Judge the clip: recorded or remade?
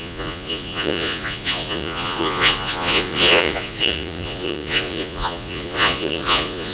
remade